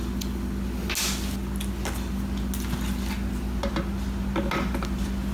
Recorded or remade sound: recorded